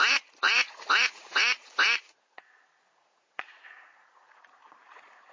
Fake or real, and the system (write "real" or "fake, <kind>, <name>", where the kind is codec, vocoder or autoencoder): fake, vocoder, Vocos